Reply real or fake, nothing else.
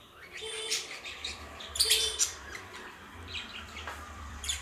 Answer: fake